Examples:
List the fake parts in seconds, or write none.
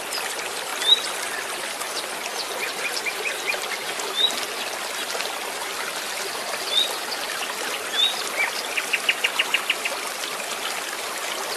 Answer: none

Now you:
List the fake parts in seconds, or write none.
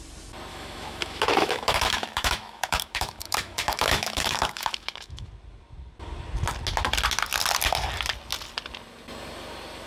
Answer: 0.5-5.3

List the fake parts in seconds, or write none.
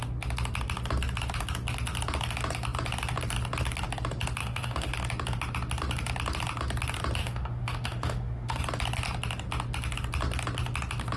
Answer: 4.4-4.9; 7.2-8.6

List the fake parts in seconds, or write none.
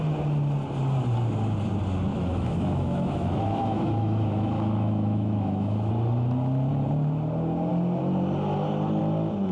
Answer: 2.1-5.9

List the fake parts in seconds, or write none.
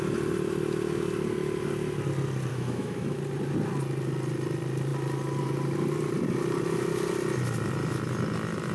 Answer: 2.5-3.2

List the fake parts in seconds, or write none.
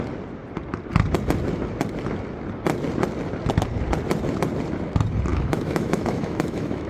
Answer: 5.3-6.9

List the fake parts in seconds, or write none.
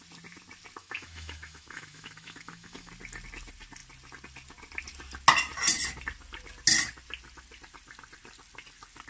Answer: 0.8-2.9